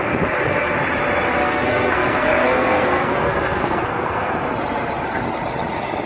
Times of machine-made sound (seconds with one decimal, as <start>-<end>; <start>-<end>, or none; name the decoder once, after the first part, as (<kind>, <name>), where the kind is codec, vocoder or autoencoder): 1.4-4.4 (codec, SNAC)